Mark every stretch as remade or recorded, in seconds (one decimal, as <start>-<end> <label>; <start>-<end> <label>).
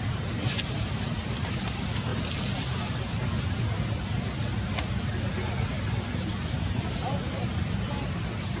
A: 0.0-2.1 remade; 2.1-6.5 recorded; 6.5-8.6 remade